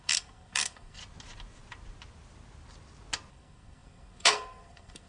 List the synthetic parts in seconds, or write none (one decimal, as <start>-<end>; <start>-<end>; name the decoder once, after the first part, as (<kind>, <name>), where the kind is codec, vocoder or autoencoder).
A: 0.0-1.0 (codec, SNAC); 3.3-5.1